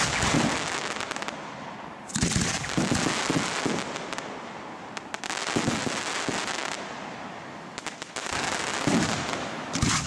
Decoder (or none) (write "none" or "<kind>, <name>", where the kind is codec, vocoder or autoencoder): none